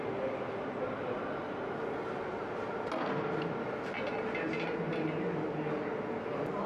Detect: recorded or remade recorded